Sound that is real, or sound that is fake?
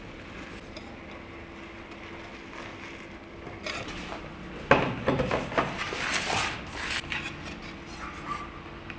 real